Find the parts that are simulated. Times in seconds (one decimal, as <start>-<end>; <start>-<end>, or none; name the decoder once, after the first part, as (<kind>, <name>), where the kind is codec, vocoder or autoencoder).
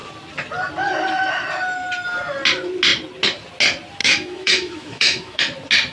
4.0-5.4 (autoencoder, DAC-VAE)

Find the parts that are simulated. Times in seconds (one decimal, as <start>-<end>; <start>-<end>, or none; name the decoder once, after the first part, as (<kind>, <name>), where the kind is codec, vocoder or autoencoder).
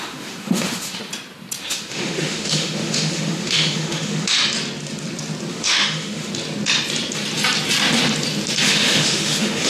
0.0-1.0 (autoencoder, DAC-VAE); 1.6-4.4; 5.5-6.3; 8.6-9.7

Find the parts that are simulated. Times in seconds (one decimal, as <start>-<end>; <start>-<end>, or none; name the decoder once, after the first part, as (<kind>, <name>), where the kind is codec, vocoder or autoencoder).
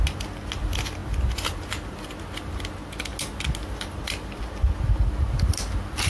none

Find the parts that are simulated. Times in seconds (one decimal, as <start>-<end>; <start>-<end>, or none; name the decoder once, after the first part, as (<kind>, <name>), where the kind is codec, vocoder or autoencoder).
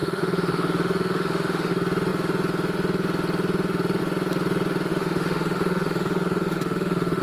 0.0-1.7 (autoencoder, DAC-VAE); 4.9-7.2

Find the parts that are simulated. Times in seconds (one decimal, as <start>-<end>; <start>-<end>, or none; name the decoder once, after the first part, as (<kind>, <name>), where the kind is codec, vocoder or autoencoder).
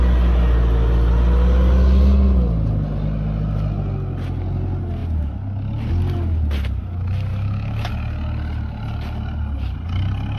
7.3-7.9 (autoencoder, DAC-VAE)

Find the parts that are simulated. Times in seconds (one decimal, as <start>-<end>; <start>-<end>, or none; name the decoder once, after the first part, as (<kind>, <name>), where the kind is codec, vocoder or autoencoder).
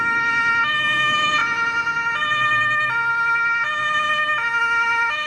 0.0-1.4 (autoencoder, DAC-VAE); 4.6-5.3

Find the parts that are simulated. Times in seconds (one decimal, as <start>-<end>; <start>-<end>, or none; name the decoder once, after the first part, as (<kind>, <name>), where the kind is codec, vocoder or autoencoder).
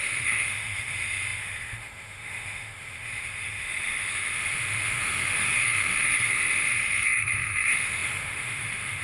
0.0-9.0 (autoencoder, DAC-VAE)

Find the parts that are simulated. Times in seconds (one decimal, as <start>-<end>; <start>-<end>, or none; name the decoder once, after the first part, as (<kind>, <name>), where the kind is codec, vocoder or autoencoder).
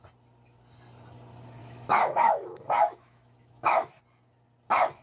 1.6-4.0 (autoencoder, DAC-VAE)